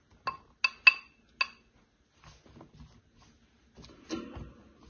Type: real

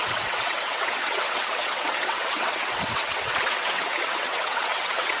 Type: fake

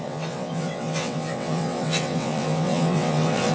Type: fake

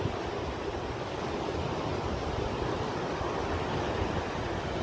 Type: real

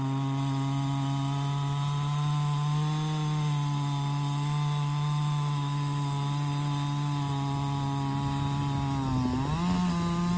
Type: real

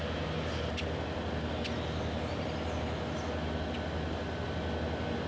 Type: real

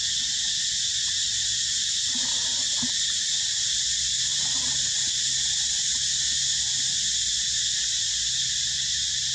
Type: real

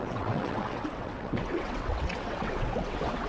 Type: fake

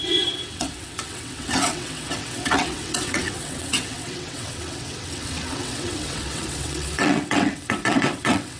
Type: fake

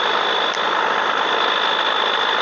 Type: real